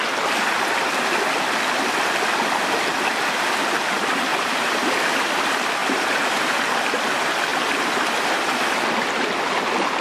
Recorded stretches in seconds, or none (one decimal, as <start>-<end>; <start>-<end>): 0.0-4.3; 5.3-5.8; 6.8-10.0